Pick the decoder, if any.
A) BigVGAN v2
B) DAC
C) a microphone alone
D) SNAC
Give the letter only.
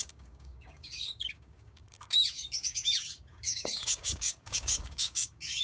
B